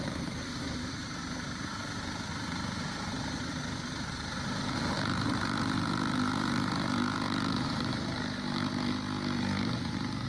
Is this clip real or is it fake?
fake